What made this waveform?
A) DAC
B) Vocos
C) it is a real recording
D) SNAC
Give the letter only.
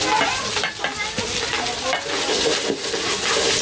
C